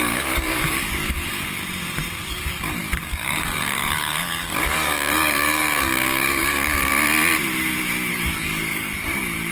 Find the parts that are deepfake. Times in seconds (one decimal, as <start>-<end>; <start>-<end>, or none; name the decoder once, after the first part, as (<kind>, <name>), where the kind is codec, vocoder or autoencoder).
0.0-1.6 (codec, DAC); 2.3-6.9; 8.1-9.5